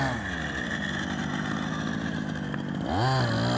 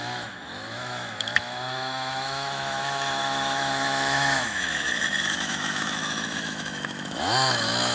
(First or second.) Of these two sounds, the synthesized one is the second